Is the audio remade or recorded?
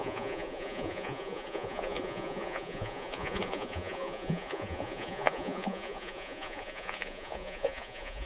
remade